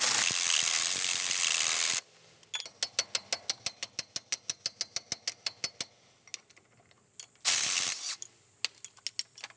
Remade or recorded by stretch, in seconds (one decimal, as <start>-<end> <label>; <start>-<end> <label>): 0.0-9.6 recorded